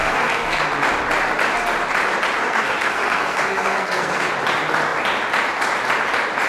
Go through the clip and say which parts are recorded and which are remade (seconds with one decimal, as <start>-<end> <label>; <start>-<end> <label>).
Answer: 0.0-0.6 remade; 0.6-2.4 recorded; 2.4-4.3 remade; 4.3-6.5 recorded